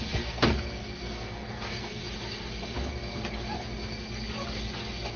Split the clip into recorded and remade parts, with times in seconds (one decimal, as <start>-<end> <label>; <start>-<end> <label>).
0.0-2.0 remade; 2.0-5.2 recorded